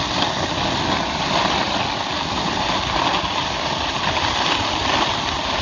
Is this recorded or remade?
recorded